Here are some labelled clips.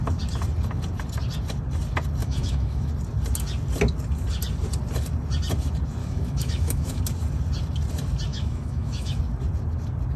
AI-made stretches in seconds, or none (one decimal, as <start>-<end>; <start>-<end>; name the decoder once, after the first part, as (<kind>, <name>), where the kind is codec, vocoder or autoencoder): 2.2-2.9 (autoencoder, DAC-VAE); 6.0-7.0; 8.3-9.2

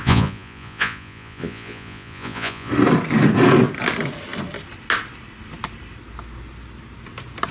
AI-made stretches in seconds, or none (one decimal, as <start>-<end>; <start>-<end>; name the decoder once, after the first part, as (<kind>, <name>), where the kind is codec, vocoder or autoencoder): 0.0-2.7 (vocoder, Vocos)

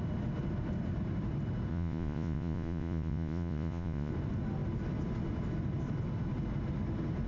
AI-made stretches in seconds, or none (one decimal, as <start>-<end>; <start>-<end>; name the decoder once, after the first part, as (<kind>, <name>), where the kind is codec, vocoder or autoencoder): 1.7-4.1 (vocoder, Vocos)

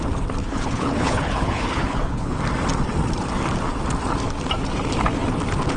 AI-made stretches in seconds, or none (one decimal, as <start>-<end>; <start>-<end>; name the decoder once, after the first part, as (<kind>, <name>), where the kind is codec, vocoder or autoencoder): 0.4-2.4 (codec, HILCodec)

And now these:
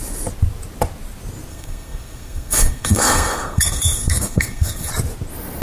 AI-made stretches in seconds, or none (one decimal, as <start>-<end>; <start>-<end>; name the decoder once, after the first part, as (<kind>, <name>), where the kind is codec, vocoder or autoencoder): 1.5-4.9 (codec, SNAC)

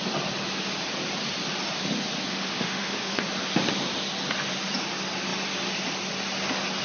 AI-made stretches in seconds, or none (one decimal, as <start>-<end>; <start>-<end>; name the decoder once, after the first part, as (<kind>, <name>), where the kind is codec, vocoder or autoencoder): 2.3-3.2 (autoencoder, DAC-VAE)

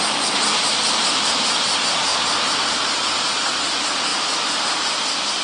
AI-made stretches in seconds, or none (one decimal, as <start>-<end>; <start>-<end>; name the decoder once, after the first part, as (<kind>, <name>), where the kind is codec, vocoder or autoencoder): 0.5-1.7 (vocoder, BigVGAN v2); 4.1-4.6